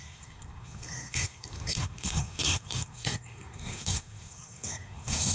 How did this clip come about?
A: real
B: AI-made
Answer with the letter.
B